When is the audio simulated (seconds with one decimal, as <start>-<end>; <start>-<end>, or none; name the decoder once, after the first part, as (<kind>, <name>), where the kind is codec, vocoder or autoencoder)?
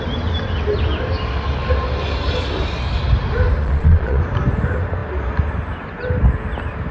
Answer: 3.6-4.2 (vocoder, Vocos)